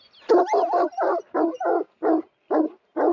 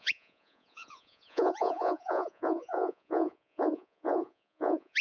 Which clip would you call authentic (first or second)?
first